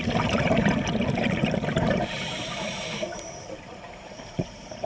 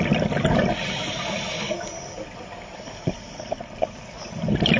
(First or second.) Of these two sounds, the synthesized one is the first